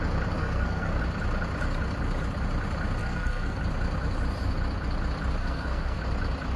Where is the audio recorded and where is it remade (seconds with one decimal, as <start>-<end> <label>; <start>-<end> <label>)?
0.0-0.4 recorded; 0.4-1.0 remade; 1.0-3.0 recorded; 3.0-3.6 remade; 3.6-5.4 recorded; 5.4-6.0 remade; 6.0-6.6 recorded